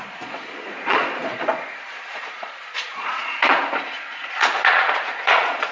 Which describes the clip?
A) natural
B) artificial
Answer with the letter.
B